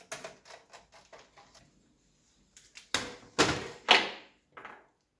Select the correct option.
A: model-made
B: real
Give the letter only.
B